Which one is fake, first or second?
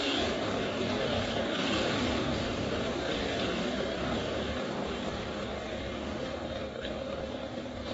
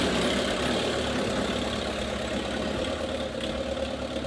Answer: first